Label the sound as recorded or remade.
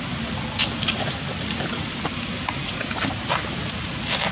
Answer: recorded